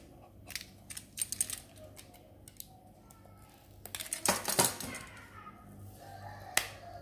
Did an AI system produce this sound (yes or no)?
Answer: no